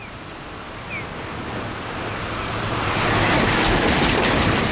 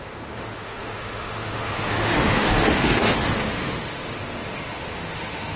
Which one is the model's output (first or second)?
second